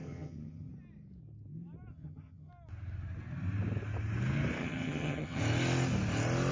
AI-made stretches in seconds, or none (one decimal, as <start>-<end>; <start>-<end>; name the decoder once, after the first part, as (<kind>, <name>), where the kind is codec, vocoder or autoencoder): 0.0-0.7 (vocoder, HiFi-GAN); 1.9-2.5; 4.6-5.4

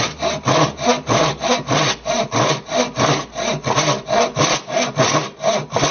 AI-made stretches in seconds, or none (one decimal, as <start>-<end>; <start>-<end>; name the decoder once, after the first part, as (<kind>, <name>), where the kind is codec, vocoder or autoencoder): none

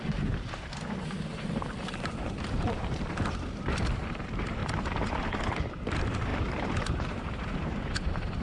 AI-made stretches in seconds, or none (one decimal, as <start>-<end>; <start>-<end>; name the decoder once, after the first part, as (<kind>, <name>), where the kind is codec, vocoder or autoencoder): 0.0-4.6 (vocoder, BigVGAN v2); 5.1-8.4

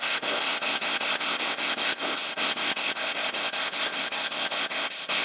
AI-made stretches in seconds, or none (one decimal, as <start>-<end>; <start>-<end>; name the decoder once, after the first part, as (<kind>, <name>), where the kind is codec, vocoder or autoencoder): 0.0-5.2 (codec, ZipCodec)